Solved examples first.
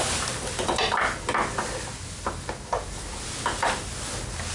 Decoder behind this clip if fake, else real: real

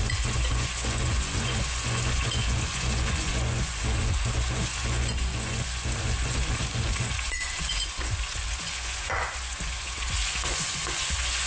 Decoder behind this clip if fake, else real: fake, vocoder, Vocos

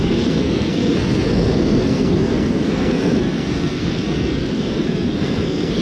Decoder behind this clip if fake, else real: fake, codec, SNAC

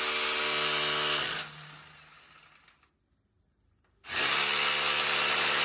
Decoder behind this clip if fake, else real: real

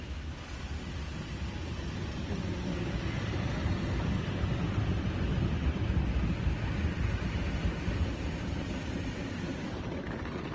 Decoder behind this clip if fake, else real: real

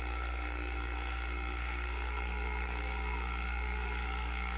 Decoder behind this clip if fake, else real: fake, codec, SNAC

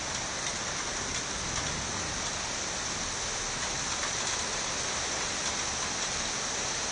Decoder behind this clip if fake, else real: real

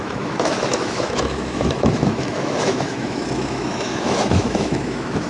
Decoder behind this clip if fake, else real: fake, autoencoder, DAC-VAE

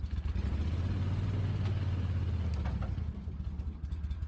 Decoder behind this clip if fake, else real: real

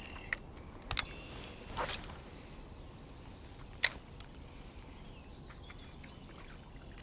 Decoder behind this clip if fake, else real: real